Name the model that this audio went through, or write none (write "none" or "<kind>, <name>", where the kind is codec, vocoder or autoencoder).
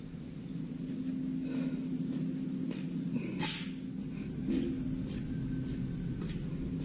none